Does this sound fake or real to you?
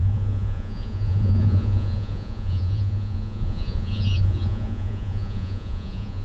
fake